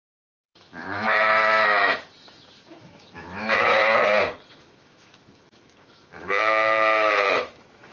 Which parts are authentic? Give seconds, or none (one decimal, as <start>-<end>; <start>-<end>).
3.8-4.5